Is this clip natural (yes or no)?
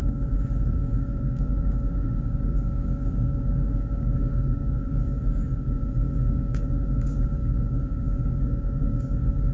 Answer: no